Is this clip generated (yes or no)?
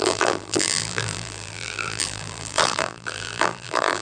yes